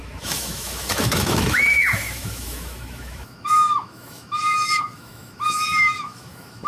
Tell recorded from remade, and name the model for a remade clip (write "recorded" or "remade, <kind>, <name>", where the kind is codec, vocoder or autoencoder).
remade, autoencoder, DAC-VAE